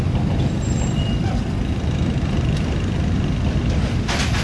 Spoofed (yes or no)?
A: yes